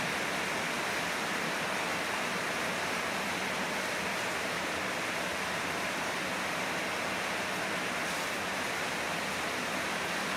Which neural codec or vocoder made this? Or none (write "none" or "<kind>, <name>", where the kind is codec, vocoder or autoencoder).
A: none